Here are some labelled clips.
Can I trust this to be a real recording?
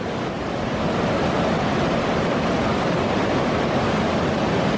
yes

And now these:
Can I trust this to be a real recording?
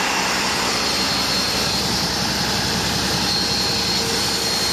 yes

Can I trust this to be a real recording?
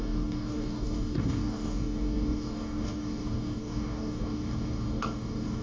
no